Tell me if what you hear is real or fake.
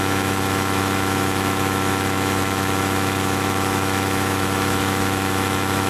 fake